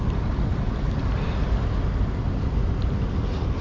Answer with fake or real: real